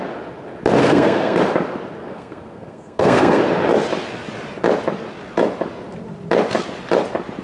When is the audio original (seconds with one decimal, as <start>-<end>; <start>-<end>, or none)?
0.0-0.8; 1.4-2.0; 3.4-7.4